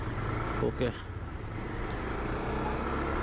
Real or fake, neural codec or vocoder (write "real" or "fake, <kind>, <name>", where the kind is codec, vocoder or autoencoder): real